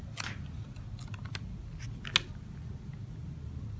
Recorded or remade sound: recorded